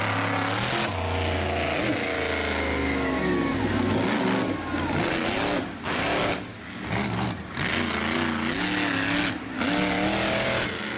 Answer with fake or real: real